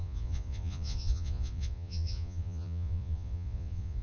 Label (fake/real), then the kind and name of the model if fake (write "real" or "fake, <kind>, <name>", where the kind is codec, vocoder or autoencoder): fake, vocoder, Vocos